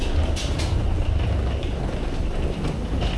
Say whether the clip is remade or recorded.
recorded